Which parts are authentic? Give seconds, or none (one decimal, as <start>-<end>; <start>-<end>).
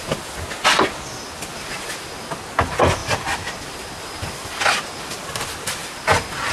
0.0-6.5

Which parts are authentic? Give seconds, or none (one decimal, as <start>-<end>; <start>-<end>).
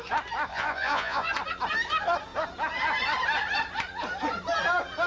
0.0-0.5; 1.3-5.1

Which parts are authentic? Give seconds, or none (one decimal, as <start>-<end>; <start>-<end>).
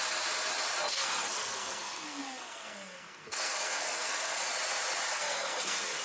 0.0-0.9; 4.5-5.1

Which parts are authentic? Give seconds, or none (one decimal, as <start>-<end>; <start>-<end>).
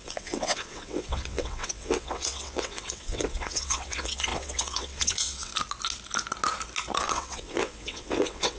5.5-7.0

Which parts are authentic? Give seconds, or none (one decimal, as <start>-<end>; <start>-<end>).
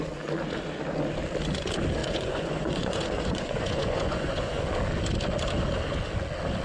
0.0-2.0; 4.6-6.6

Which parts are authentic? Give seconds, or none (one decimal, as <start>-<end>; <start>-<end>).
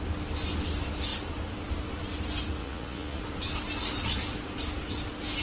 0.0-2.6; 3.2-5.4